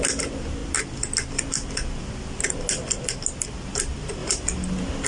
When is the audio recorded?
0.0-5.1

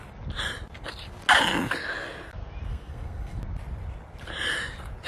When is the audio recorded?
0.0-2.7; 3.4-5.1

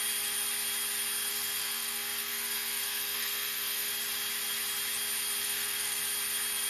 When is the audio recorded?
0.0-1.3; 3.9-5.4; 6.0-6.7

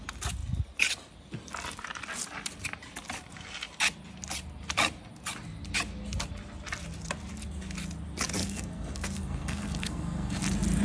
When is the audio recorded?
0.0-8.4; 10.4-10.8

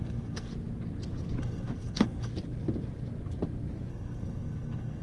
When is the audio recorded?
0.5-1.4; 2.3-3.9

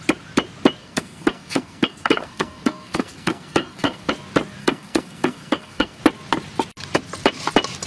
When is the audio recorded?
0.0-0.8; 4.1-4.6; 6.0-7.9

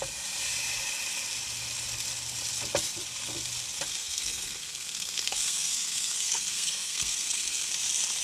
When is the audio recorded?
0.0-3.9; 7.7-8.2